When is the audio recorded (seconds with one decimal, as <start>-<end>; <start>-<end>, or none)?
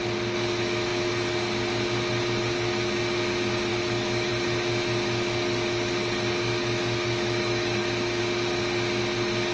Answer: 0.0-3.7; 4.3-6.5; 8.2-9.5